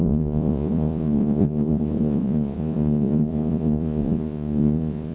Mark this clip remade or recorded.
remade